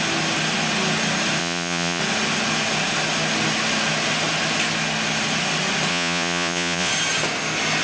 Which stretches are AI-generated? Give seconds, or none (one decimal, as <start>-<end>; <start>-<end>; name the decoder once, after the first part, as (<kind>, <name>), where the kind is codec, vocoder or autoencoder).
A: 1.4-2.0 (vocoder, Vocos); 5.9-6.9